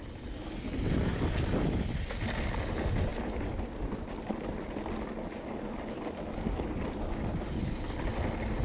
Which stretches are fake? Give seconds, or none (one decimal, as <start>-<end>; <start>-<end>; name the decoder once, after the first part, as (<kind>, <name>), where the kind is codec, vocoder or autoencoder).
none